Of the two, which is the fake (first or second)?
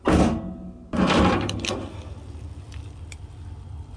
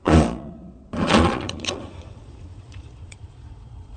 second